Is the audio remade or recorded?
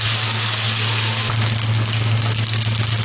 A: recorded